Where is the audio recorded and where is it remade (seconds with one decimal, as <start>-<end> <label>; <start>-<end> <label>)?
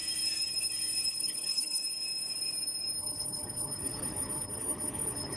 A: 0.0-1.1 recorded; 1.1-1.8 remade; 1.8-3.0 recorded; 3.0-5.4 remade